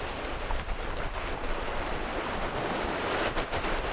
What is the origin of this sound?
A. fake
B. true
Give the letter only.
B